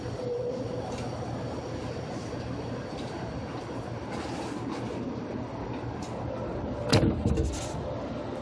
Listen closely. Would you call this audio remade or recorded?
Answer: recorded